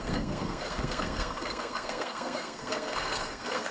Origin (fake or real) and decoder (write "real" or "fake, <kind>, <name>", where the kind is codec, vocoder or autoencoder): fake, codec, SNAC